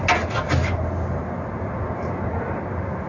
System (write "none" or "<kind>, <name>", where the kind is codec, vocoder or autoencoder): none